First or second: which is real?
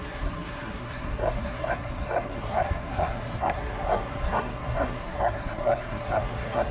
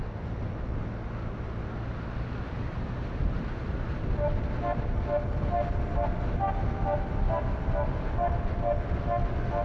second